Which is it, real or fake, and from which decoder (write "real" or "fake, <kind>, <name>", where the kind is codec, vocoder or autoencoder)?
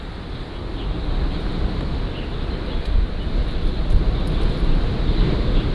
real